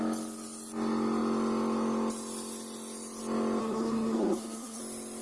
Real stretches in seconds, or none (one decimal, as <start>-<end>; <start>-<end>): 0.0-3.6; 4.8-5.2